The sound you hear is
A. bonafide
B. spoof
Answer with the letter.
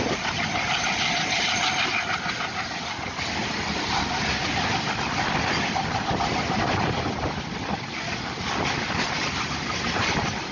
A